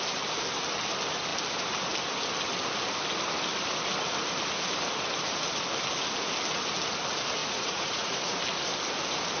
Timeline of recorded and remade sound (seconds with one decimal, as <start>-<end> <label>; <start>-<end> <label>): 0.0-7.4 recorded; 7.4-8.4 remade; 8.4-9.4 recorded